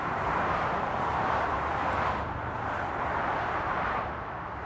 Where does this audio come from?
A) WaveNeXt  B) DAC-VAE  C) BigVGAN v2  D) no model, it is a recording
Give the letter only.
C